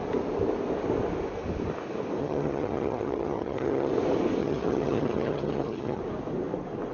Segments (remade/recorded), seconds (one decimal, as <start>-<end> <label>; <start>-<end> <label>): 0.0-2.2 recorded; 2.2-3.9 remade; 3.9-4.4 recorded; 4.4-6.0 remade; 6.0-6.9 recorded